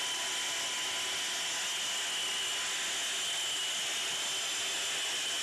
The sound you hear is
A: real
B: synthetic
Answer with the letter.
A